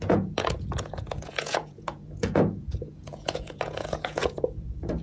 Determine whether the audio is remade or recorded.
remade